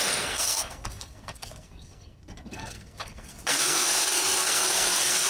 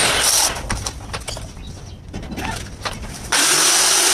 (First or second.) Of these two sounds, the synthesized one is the first